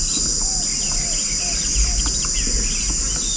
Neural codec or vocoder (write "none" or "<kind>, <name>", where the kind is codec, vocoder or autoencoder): none